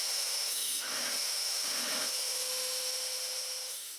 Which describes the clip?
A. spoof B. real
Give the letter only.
A